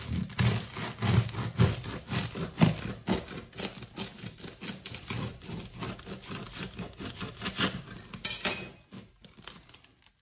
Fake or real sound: real